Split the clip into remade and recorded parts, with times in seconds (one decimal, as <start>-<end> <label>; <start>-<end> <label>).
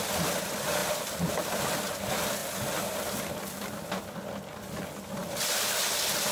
0.0-0.8 recorded; 0.8-1.5 remade; 1.5-5.2 recorded; 5.2-6.3 remade